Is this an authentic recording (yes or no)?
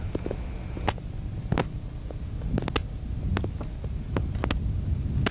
yes